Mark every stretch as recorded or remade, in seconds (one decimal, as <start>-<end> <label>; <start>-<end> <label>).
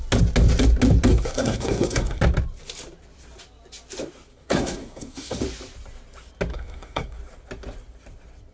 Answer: 0.0-1.1 recorded; 1.1-2.2 remade; 2.2-4.3 recorded; 4.3-5.4 remade; 5.4-6.5 recorded; 6.5-7.2 remade; 7.2-8.5 recorded